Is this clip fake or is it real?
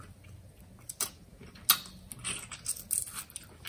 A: real